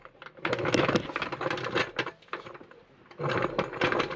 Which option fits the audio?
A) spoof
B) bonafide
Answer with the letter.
B